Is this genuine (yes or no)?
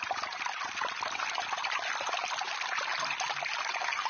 yes